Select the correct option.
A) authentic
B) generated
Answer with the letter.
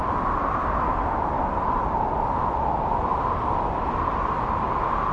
A